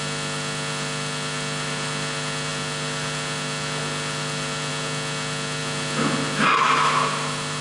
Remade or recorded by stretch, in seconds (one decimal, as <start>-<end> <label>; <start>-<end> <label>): 0.0-7.6 recorded